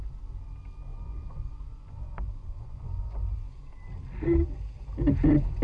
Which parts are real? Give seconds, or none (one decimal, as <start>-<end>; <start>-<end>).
0.0-0.9; 3.7-5.6

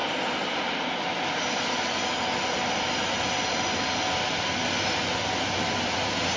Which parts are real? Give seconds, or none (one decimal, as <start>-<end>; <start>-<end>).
0.0-6.4